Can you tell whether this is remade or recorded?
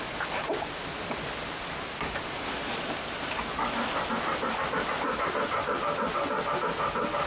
recorded